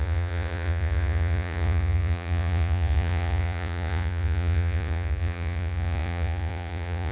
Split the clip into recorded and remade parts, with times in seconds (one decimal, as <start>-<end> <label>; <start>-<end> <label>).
0.0-7.1 remade